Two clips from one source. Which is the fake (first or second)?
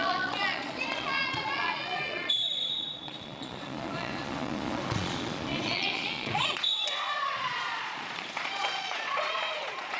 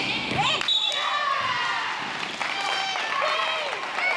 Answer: first